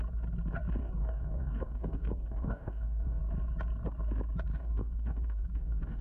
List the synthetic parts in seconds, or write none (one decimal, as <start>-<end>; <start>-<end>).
0.8-3.2; 4.5-6.0